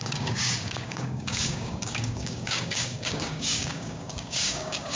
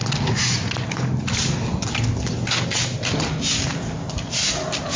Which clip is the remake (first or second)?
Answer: first